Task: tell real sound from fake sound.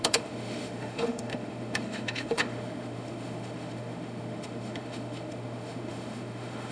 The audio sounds fake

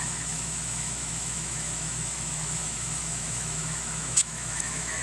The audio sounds fake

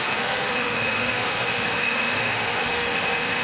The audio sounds fake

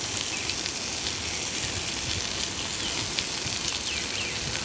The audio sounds real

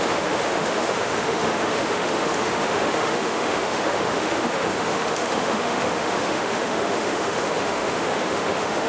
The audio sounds fake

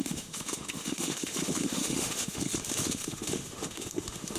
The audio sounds fake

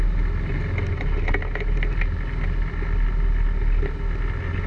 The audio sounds real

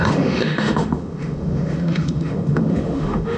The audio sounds fake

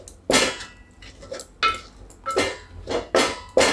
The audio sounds real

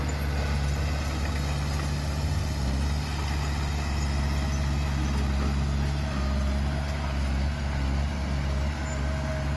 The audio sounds real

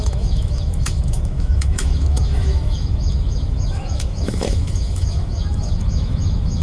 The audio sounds fake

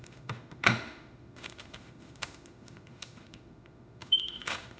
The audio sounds fake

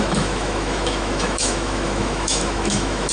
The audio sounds fake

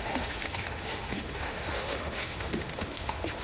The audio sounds fake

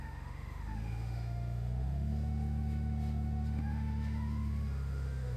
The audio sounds fake